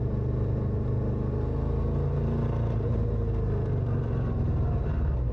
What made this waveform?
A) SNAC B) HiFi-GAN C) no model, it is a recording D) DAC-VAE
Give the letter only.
C